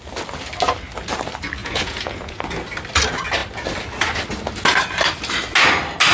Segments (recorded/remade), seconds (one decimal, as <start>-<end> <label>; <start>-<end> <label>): 0.0-1.6 recorded; 1.6-2.4 remade; 2.4-6.1 recorded